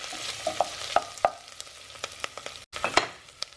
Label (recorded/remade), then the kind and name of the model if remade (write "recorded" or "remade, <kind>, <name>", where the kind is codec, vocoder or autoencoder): recorded